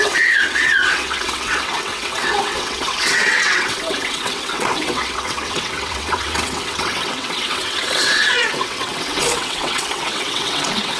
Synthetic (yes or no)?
yes